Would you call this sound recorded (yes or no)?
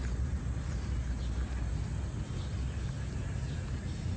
yes